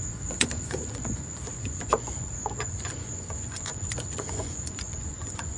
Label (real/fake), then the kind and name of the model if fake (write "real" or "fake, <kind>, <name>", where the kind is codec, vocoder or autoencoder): fake, vocoder, Vocos